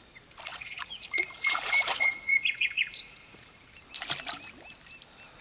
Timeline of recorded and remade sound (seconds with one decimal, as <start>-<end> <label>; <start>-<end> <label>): 0.0-0.5 recorded; 0.5-3.7 remade; 3.7-5.4 recorded